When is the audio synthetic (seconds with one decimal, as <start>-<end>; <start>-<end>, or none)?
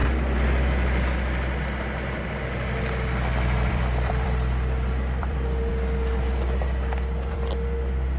3.7-5.7; 7.3-8.2